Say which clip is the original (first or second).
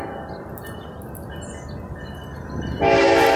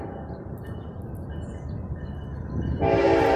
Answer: first